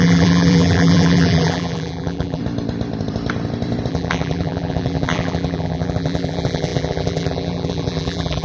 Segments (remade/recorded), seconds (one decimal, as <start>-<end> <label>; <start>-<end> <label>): 0.0-2.4 remade; 2.4-3.9 recorded; 3.9-8.4 remade

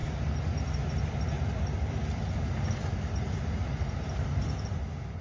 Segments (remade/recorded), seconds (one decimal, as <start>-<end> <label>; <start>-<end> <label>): 0.0-5.2 recorded

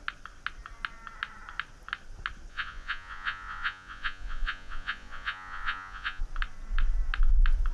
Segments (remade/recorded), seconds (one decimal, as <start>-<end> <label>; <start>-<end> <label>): 0.0-2.5 recorded; 2.5-6.2 remade; 6.2-7.7 recorded

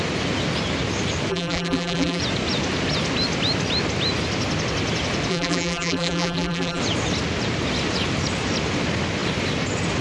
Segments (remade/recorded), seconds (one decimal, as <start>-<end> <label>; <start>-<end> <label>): 0.0-1.3 recorded; 1.3-2.2 remade; 2.2-5.3 recorded; 5.3-6.8 remade; 6.8-10.0 recorded

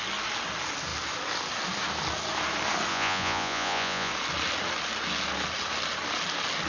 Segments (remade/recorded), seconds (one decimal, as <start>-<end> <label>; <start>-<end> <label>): 0.0-2.9 recorded; 2.9-4.1 remade; 4.1-6.7 recorded

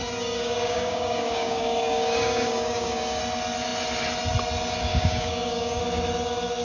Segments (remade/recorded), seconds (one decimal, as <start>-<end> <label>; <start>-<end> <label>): 0.0-3.2 remade; 3.2-4.9 recorded; 4.9-5.8 remade; 5.8-6.6 recorded

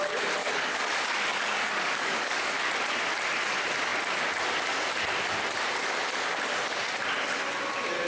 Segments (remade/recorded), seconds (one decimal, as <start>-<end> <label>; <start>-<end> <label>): 0.0-0.4 recorded; 0.4-0.9 remade; 0.9-1.3 recorded; 1.3-2.7 remade; 2.7-8.1 recorded

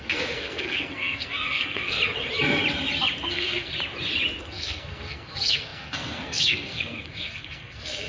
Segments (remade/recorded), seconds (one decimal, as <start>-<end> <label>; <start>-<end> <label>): 0.0-2.0 remade; 2.0-3.3 recorded; 3.3-3.7 remade; 3.7-4.4 recorded; 4.4-8.1 remade